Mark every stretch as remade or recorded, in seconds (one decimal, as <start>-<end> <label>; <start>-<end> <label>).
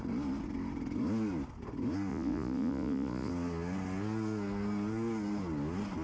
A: 0.0-2.1 recorded; 2.1-3.3 remade; 3.3-6.0 recorded